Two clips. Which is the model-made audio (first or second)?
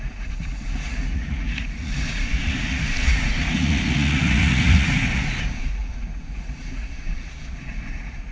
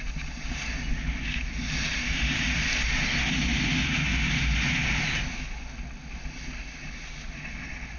first